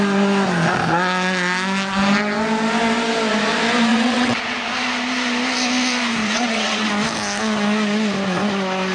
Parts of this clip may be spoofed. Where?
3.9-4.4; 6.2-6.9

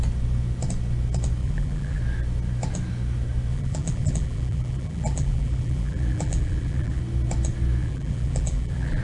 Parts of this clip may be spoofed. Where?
1.4-2.0; 3.5-7.0; 7.8-9.0